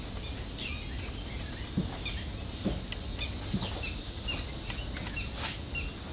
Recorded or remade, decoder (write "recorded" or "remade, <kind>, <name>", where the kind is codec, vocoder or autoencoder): recorded